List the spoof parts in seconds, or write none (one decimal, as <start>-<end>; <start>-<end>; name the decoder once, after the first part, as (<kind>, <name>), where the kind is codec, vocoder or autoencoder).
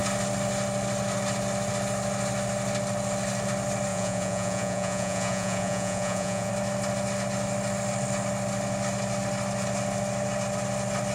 3.9-6.5 (vocoder, Vocos)